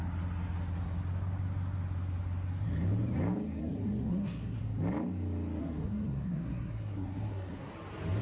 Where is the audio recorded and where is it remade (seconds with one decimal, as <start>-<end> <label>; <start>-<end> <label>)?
0.0-3.6 recorded; 3.6-4.6 remade; 4.6-5.6 recorded; 5.6-7.7 remade; 7.7-8.2 recorded